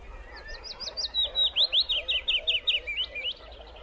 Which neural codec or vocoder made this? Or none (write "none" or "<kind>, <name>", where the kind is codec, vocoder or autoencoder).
none